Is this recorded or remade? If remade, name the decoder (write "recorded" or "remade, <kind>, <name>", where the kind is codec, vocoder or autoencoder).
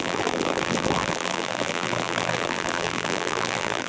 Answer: remade, vocoder, BigVGAN v2